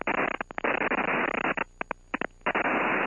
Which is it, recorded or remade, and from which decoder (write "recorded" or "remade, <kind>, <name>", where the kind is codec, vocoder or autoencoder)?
recorded